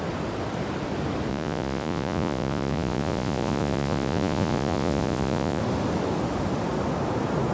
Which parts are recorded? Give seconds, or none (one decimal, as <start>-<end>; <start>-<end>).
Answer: 0.0-1.3; 5.6-7.5